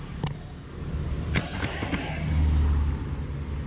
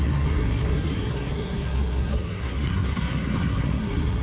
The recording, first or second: first